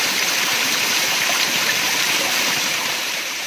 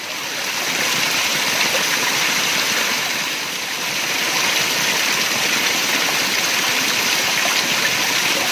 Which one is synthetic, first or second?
first